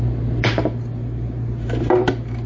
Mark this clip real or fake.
real